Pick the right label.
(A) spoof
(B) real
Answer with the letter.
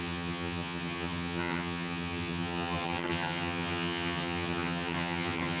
A